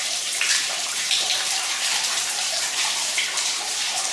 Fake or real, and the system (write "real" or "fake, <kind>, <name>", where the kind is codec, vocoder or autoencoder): fake, vocoder, BigVGAN v2